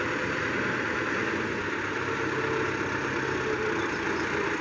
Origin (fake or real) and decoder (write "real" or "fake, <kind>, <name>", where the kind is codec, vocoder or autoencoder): real